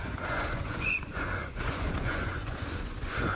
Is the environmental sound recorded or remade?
remade